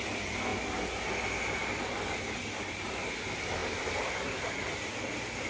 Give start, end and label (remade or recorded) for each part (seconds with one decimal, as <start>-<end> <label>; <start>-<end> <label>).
0.0-5.5 recorded